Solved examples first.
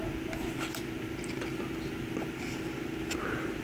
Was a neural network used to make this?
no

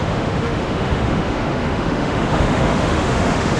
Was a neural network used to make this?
yes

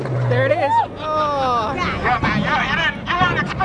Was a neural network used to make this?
no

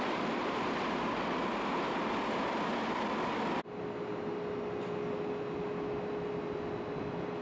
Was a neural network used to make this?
no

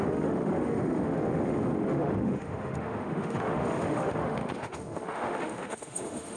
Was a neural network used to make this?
yes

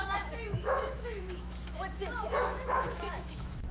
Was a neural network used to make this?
yes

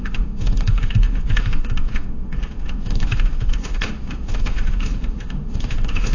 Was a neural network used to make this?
yes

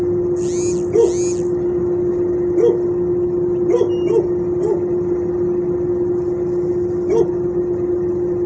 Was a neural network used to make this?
no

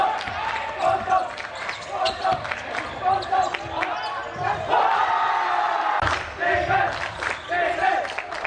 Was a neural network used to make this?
no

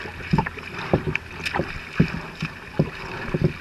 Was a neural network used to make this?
no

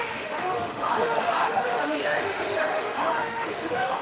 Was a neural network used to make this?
yes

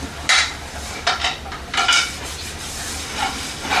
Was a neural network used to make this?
no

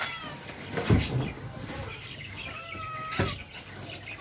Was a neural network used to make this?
no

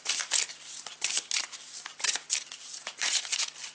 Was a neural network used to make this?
no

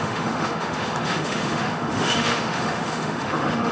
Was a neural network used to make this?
yes